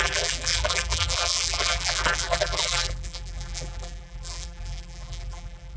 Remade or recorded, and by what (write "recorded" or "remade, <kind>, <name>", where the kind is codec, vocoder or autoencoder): remade, vocoder, BigVGAN v2